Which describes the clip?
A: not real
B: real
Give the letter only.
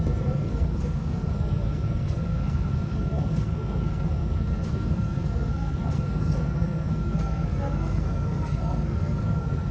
A